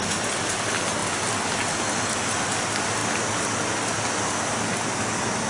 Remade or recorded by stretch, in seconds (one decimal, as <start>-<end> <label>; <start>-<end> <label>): 0.0-5.5 recorded